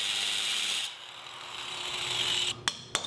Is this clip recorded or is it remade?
recorded